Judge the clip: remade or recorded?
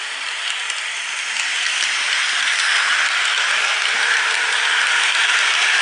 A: recorded